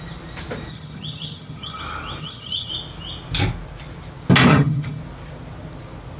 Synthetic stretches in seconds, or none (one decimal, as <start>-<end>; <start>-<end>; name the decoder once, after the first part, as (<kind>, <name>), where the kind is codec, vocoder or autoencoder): 0.7-1.8 (vocoder, HiFi-GAN); 2.2-2.7; 4.5-5.0